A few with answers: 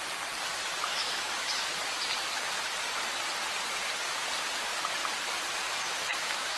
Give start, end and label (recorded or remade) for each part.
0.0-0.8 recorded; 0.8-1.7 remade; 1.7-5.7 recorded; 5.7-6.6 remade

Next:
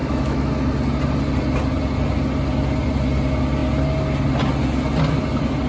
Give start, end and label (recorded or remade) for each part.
0.0-0.5 remade; 0.5-5.7 recorded

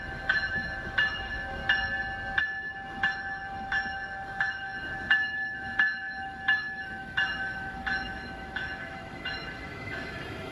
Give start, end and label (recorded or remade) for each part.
0.0-1.6 remade; 1.6-2.4 recorded; 2.4-10.5 remade